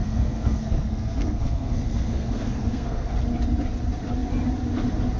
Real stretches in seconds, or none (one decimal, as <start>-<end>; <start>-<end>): 3.1-5.2